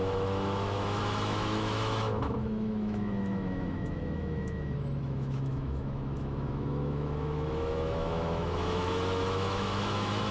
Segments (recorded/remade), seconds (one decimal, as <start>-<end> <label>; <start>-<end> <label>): 0.0-10.3 remade